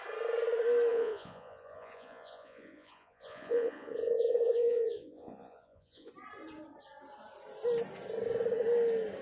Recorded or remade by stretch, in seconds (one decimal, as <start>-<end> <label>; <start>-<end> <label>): 0.0-0.9 recorded; 0.9-6.1 remade; 6.1-9.2 recorded